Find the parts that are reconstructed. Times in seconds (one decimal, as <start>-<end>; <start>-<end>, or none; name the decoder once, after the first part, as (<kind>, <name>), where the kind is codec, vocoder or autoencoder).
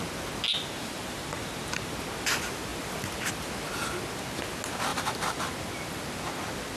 0.5-1.9 (vocoder, BigVGAN v2); 4.9-5.5